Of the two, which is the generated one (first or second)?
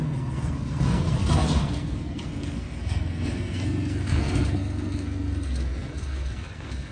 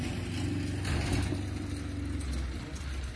first